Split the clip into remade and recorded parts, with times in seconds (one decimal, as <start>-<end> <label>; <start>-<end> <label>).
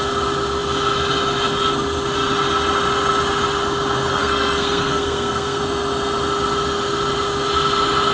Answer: 0.0-4.1 recorded; 4.1-5.6 remade; 5.6-8.1 recorded